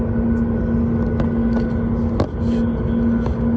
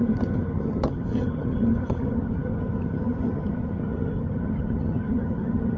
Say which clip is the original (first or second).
first